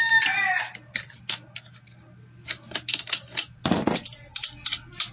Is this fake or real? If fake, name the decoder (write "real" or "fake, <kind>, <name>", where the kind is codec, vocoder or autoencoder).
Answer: real